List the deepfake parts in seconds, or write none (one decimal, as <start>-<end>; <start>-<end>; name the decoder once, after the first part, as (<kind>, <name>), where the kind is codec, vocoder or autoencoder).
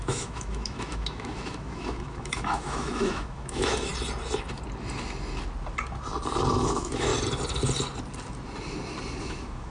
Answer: 0.0-3.9 (autoencoder, DAC-VAE); 6.5-7.1; 9.2-9.7